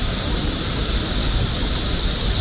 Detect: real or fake real